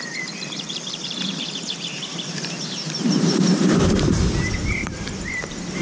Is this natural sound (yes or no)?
no